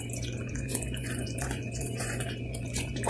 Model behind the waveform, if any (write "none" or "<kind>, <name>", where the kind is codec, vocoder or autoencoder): vocoder, Vocos